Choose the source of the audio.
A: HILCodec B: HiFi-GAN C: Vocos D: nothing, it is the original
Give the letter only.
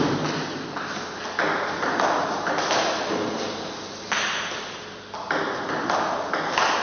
D